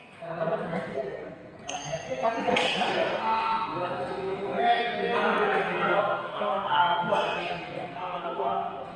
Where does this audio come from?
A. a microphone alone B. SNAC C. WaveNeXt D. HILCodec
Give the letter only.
B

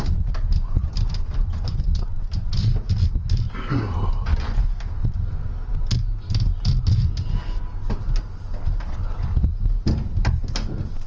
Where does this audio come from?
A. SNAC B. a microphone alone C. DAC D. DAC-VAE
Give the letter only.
B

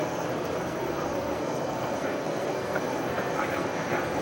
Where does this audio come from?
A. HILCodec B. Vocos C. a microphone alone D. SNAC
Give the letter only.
D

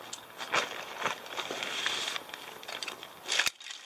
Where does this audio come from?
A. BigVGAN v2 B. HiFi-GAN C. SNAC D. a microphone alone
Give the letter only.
D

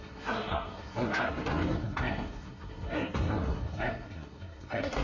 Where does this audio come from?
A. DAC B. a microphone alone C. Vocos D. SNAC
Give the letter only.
D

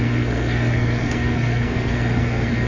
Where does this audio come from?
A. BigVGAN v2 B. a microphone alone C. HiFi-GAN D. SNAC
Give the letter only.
D